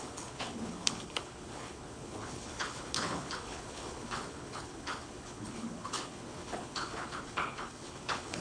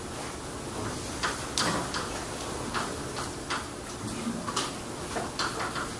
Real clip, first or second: second